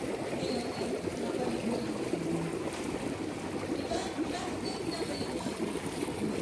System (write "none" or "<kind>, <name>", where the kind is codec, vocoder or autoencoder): none